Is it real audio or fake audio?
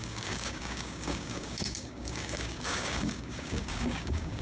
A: fake